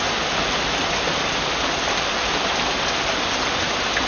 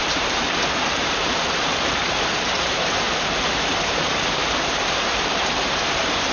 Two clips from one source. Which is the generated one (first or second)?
second